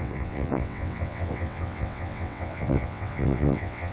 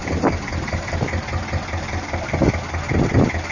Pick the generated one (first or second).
first